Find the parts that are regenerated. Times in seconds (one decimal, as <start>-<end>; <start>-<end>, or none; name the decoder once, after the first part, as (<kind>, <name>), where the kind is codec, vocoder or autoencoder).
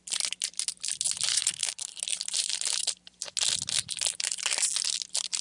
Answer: 1.3-2.0 (codec, HILCodec)